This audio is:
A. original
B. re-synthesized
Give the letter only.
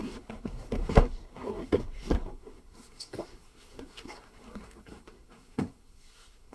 B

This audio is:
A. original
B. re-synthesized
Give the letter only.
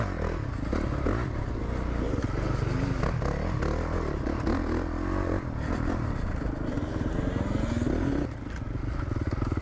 A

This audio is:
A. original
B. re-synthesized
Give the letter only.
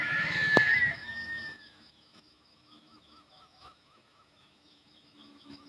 B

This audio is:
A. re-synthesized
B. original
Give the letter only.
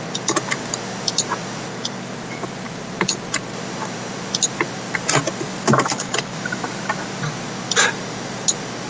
B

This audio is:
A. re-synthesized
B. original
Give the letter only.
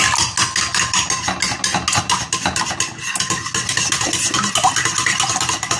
B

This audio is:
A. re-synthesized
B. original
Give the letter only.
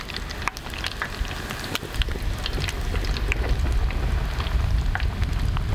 B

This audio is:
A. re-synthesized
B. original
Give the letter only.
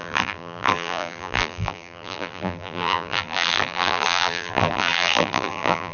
A